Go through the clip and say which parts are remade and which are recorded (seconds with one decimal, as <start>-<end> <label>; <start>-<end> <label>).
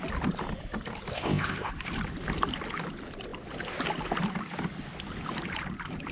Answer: 0.0-1.1 recorded; 1.1-1.7 remade; 1.7-6.1 recorded